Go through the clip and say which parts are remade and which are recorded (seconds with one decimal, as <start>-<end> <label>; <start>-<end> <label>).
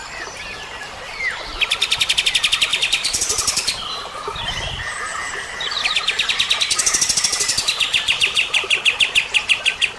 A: 0.0-2.7 recorded; 2.7-6.3 remade; 6.3-7.3 recorded; 7.3-8.8 remade; 8.8-10.0 recorded